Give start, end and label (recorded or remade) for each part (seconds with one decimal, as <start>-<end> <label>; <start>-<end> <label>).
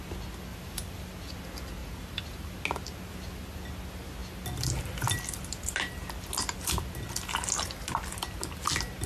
0.0-0.5 recorded; 0.5-1.0 remade; 1.0-1.8 recorded; 1.8-2.5 remade; 2.5-9.1 recorded